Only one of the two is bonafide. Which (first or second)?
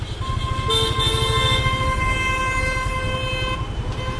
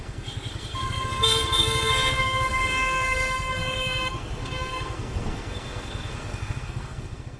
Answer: first